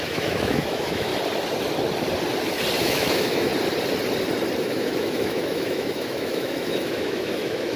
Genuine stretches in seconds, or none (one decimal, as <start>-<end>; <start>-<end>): 1.1-2.8; 3.5-4.6